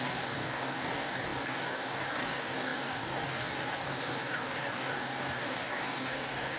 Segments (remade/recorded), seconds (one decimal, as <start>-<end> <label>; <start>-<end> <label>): 0.0-6.6 remade